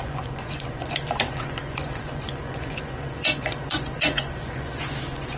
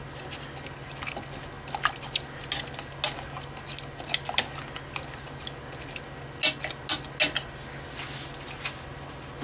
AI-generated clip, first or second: first